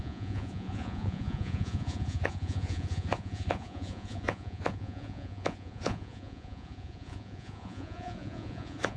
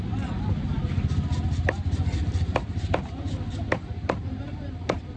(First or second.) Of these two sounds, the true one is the second